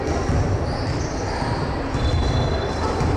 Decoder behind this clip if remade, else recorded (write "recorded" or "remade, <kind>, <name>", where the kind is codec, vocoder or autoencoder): remade, vocoder, BigVGAN v2